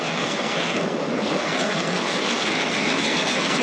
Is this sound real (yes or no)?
no